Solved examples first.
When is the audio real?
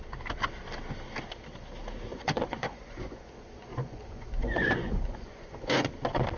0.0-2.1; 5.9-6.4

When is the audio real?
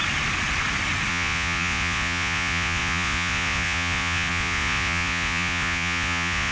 0.0-1.1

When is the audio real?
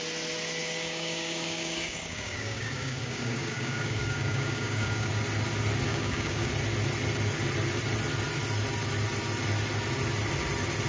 0.0-0.6; 5.1-5.9; 6.5-10.9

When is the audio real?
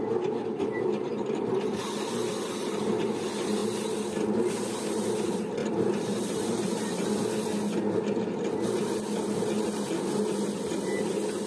0.0-5.6; 6.8-11.5